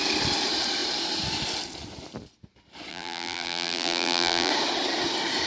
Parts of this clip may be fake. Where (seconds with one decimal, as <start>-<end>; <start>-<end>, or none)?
2.9-4.5